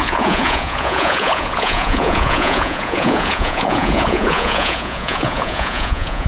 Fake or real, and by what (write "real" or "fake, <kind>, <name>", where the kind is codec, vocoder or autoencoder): fake, vocoder, Vocos